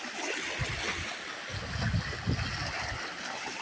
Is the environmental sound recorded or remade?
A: recorded